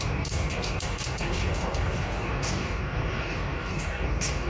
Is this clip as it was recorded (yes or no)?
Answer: no